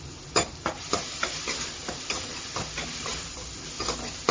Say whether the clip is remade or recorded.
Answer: remade